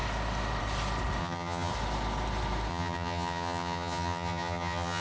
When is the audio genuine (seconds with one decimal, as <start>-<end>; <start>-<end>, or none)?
0.0-1.2; 1.7-2.7